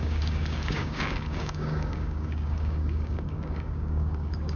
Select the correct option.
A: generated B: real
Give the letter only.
A